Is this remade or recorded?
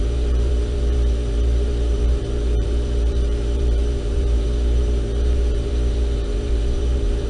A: remade